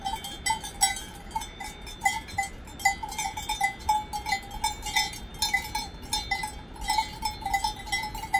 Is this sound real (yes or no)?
yes